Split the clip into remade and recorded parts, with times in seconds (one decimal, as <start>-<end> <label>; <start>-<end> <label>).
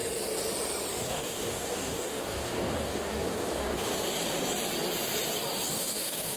0.0-1.1 recorded; 1.1-3.9 remade; 3.9-5.7 recorded; 5.7-6.4 remade